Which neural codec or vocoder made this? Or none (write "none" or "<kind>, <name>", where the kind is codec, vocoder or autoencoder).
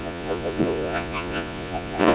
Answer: vocoder, Vocos